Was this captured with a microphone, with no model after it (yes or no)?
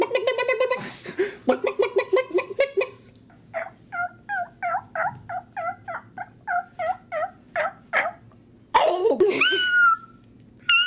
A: yes